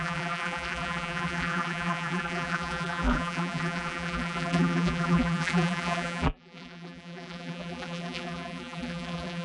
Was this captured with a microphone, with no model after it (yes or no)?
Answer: no